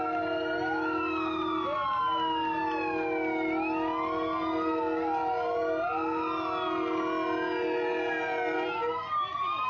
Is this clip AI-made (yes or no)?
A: no